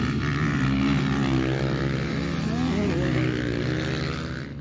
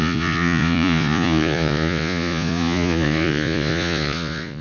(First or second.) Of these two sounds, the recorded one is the first